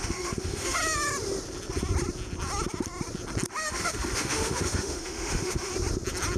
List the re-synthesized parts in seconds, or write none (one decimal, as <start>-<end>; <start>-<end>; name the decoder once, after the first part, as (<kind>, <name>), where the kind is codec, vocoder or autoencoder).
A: 0.0-0.8 (autoencoder, DAC-VAE); 3.5-5.7